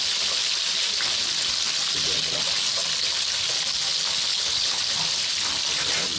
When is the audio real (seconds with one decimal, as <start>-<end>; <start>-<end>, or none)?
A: 0.0-4.3; 4.8-6.2

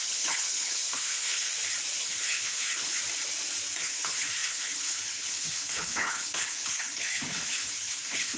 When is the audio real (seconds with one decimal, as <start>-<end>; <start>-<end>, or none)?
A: 1.5-2.0; 3.0-3.8

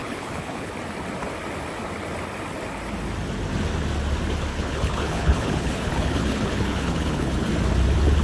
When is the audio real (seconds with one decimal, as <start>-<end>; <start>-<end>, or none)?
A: 0.7-4.5; 7.5-8.2

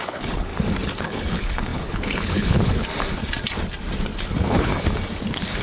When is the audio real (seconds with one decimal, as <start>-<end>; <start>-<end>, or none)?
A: 0.5-1.0; 2.8-4.2; 4.7-5.6

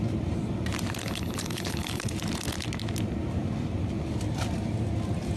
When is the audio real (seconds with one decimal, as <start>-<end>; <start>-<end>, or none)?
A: 0.0-1.0; 2.1-5.4

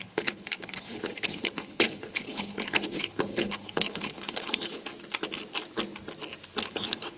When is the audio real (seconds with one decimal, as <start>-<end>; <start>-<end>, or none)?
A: 4.8-6.6

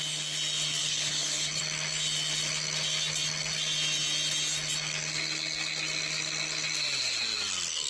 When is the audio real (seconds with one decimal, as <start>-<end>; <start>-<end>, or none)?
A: 0.0-0.8; 1.6-7.9

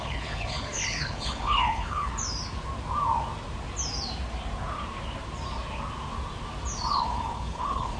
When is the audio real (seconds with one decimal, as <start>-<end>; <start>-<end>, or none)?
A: 2.1-6.9